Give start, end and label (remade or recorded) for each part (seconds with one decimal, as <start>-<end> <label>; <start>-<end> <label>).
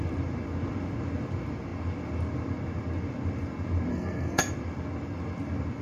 0.0-3.9 recorded; 3.9-4.4 remade; 4.4-5.8 recorded